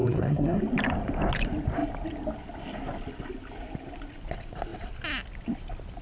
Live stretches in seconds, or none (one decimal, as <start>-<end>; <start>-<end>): 0.6-6.0